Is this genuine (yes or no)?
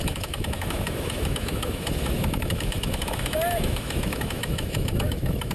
no